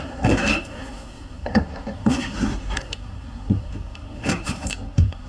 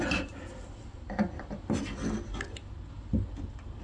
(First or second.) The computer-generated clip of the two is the first